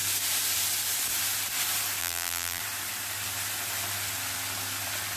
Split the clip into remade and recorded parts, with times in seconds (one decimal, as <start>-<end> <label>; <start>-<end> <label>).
0.0-2.0 recorded; 2.0-2.6 remade; 2.6-5.2 recorded